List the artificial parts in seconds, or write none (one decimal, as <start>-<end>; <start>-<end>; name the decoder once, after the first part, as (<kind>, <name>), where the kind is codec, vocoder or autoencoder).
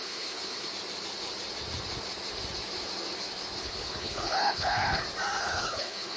0.0-0.7 (codec, HILCodec); 3.6-5.0; 5.4-6.2